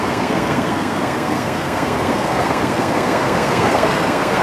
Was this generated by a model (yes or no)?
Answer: yes